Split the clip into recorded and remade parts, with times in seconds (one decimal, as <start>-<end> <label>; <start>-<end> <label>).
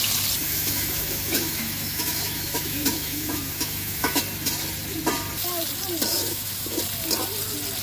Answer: 0.0-0.4 recorded; 0.4-4.2 remade; 4.2-6.1 recorded; 6.1-6.8 remade; 6.8-7.8 recorded